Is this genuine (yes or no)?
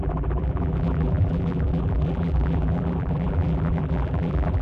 no